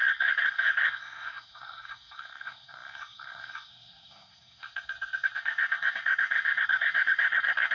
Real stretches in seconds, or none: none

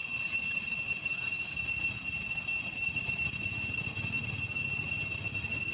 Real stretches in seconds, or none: 0.0-5.7

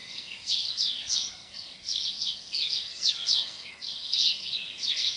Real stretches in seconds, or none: none

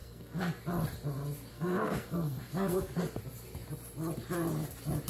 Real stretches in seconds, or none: 0.6-1.5; 3.0-5.1